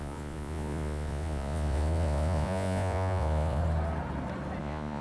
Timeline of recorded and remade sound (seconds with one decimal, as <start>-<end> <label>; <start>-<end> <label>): 0.0-3.6 remade; 3.6-4.6 recorded; 4.6-5.0 remade

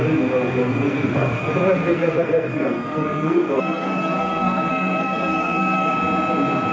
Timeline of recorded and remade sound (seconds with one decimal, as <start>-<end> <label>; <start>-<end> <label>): 0.0-0.6 recorded; 0.6-1.5 remade; 1.5-1.9 recorded; 1.9-5.9 remade; 5.9-6.7 recorded